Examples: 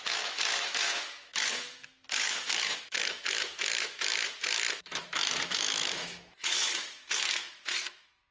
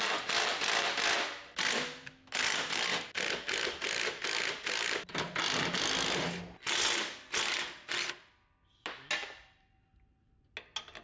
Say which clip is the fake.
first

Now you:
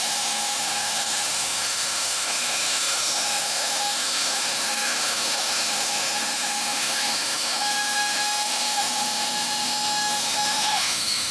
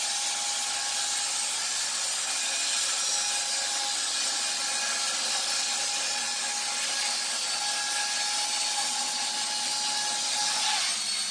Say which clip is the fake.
first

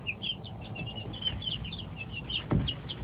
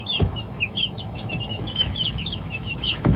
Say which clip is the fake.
second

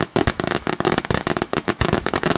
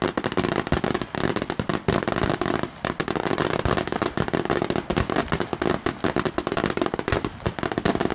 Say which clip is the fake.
first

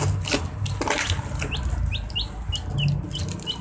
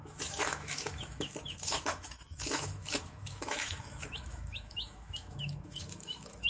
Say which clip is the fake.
second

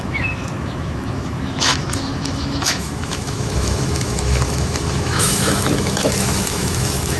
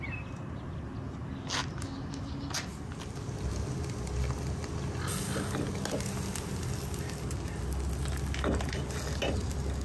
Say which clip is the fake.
first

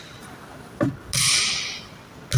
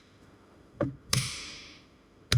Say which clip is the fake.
second